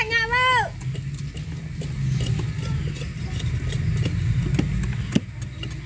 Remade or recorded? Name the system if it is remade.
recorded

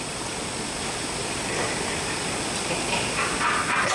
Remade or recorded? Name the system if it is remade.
recorded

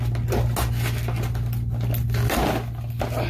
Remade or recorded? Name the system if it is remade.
recorded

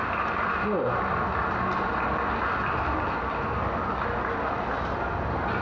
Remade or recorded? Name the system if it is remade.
recorded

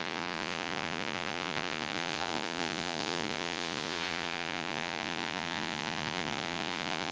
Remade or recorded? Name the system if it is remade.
remade, vocoder, Vocos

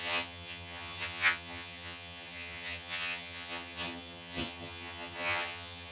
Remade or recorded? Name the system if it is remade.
remade, vocoder, HiFi-GAN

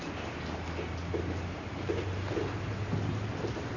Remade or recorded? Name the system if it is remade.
recorded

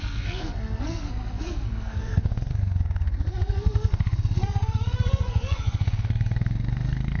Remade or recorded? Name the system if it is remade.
remade, codec, SNAC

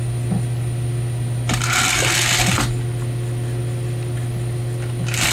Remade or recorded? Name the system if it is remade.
recorded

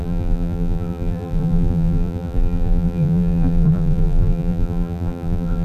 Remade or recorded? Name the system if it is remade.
remade, vocoder, BigVGAN v2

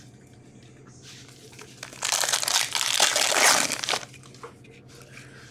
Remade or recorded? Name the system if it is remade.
recorded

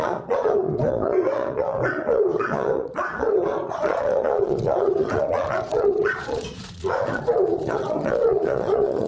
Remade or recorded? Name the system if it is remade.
remade, vocoder, Vocos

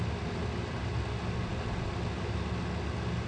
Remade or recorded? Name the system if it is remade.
recorded